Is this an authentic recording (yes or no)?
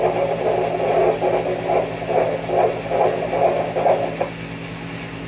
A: yes